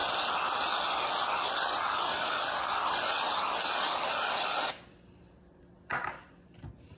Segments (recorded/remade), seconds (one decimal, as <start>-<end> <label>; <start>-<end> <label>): 0.0-7.0 recorded